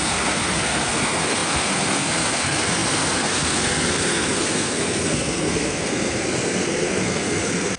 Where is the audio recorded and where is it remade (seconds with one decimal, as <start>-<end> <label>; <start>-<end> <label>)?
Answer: 0.0-7.8 remade